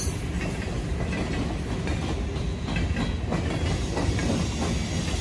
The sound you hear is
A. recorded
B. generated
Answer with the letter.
A